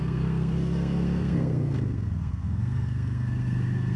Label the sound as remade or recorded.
remade